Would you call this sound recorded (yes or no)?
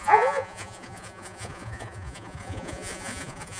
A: no